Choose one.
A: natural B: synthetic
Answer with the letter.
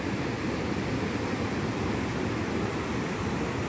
A